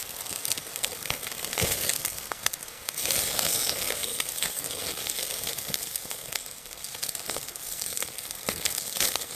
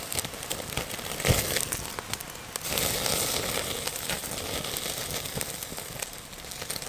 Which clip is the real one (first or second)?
second